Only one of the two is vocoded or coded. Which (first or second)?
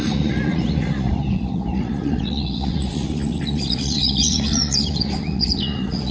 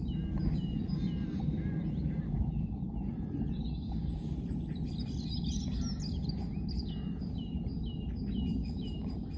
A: first